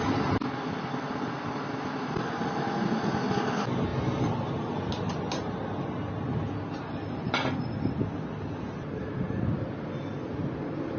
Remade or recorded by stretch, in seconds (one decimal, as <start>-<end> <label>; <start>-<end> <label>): 0.0-11.0 recorded